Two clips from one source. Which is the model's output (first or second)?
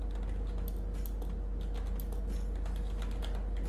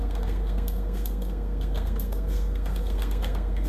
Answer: second